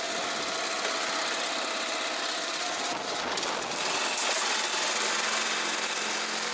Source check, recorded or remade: recorded